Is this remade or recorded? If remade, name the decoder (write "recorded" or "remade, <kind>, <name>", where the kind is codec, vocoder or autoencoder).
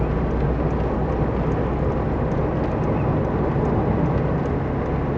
recorded